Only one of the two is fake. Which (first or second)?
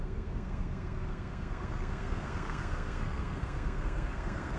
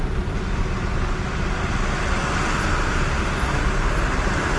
first